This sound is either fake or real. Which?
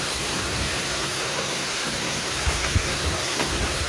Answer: fake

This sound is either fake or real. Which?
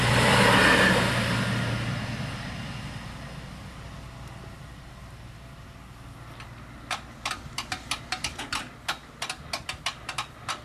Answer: real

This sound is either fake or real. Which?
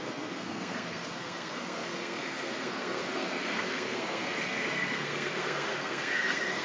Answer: fake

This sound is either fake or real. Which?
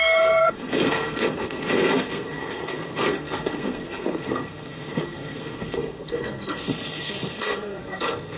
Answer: fake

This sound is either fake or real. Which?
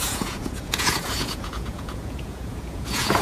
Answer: fake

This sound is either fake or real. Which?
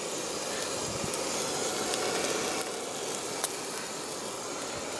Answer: real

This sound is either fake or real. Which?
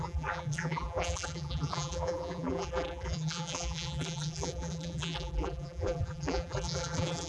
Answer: fake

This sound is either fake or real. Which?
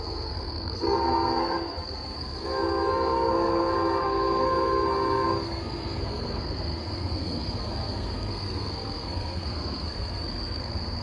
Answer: fake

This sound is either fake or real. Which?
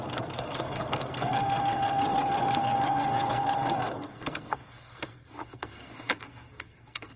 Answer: fake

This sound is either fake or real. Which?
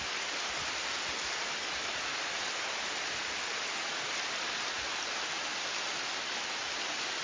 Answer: real